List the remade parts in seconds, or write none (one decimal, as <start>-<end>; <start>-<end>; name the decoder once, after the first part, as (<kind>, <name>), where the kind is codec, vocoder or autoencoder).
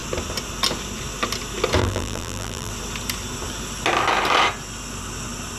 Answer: 1.8-2.7 (vocoder, BigVGAN v2)